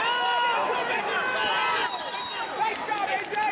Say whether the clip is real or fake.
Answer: real